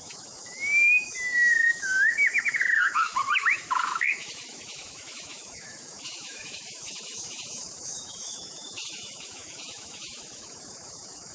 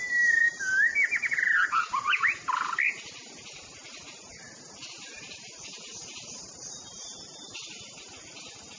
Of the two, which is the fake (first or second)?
first